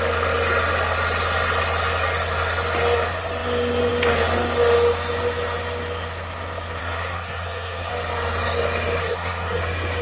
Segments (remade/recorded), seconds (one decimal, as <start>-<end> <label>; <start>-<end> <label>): 0.0-6.8 recorded; 6.8-7.9 remade; 7.9-9.0 recorded; 9.0-9.6 remade; 9.6-10.0 recorded